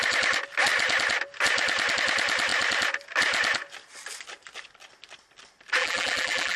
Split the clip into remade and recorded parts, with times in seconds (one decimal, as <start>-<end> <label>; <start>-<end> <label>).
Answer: 0.0-5.8 recorded; 5.8-6.6 remade